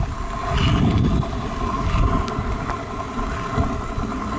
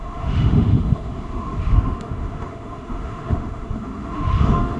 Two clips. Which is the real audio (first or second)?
first